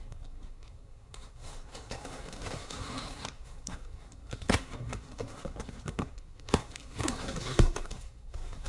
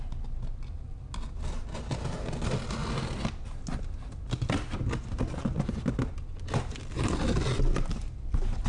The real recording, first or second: second